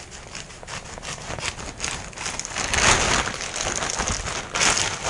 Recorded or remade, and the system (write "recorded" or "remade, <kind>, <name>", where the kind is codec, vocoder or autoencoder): recorded